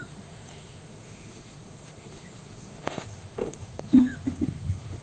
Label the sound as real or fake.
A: fake